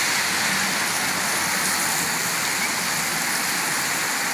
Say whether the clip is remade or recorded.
recorded